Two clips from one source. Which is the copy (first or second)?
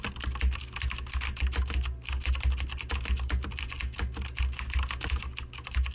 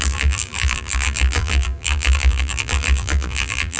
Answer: second